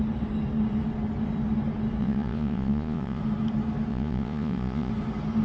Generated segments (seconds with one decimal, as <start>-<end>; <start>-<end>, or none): 2.0-3.2; 3.9-4.9